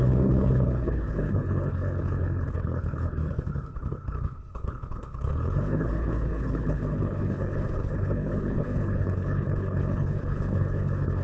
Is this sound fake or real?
fake